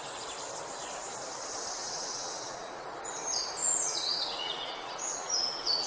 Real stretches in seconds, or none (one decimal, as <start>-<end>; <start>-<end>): 0.0-1.8; 2.9-3.6